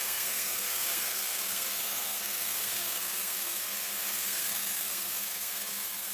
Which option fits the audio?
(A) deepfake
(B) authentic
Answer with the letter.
A